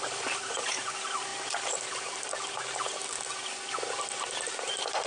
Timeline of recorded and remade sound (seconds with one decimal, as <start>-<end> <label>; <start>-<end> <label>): 0.0-5.1 remade